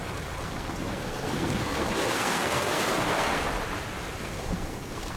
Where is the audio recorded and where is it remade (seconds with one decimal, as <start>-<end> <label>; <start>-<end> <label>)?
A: 0.0-3.5 remade; 3.5-4.2 recorded; 4.2-5.2 remade